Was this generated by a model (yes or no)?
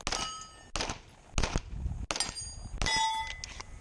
no